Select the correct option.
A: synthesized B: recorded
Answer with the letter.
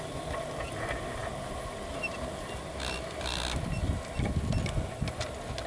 B